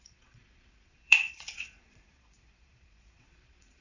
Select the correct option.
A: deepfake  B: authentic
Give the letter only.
A